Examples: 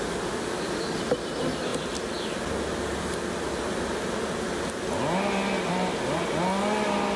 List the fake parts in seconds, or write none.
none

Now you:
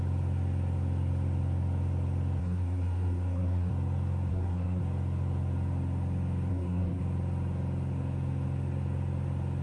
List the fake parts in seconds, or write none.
2.4-3.7 (codec, SNAC); 4.3-4.8; 6.5-7.0